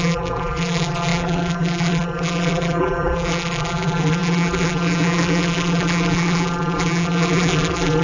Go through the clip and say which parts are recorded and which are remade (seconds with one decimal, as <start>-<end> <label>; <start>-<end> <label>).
0.0-8.0 remade